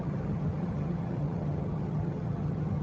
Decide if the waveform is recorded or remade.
remade